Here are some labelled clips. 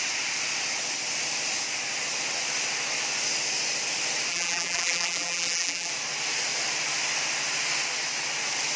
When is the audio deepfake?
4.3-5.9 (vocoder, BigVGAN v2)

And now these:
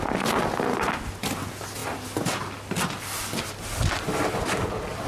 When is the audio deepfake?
none

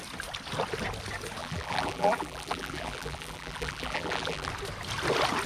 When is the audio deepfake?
1.4-4.5 (vocoder, BigVGAN v2)

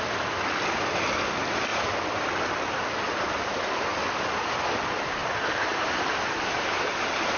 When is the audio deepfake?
5.2-7.4 (vocoder, BigVGAN v2)

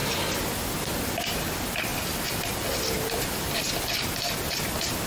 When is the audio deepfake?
1.9-3.7 (vocoder, BigVGAN v2)

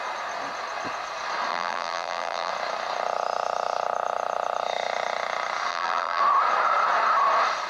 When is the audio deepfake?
1.5-2.5 (vocoder, BigVGAN v2); 5.7-6.2

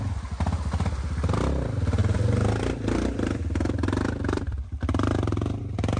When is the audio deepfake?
2.0-5.6 (vocoder, BigVGAN v2)